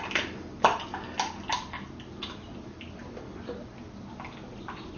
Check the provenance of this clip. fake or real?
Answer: real